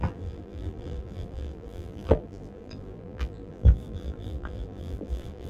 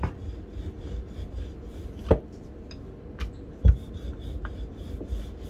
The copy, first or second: first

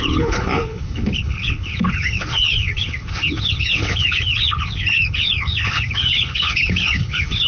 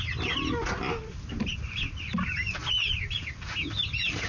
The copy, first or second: first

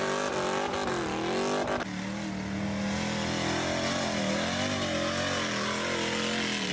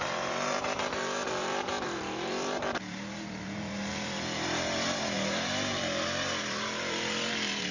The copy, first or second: second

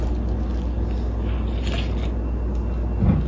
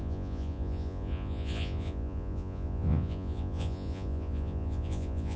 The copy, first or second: second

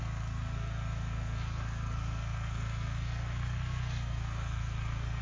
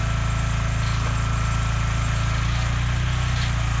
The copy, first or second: first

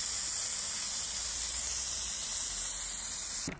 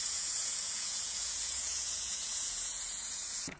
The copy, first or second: second